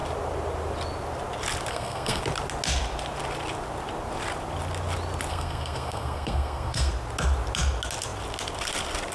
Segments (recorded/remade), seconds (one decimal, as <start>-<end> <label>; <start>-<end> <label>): 0.0-1.7 recorded; 1.7-2.2 remade; 2.2-5.3 recorded; 5.3-6.9 remade; 6.9-9.1 recorded